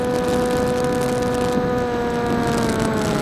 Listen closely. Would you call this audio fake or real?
real